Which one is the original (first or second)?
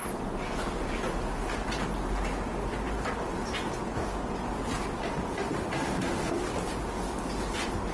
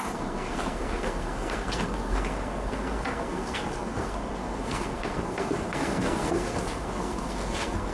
first